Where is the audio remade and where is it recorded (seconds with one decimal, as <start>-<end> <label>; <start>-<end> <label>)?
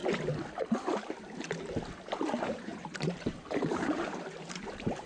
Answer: 0.0-2.0 recorded; 2.0-5.1 remade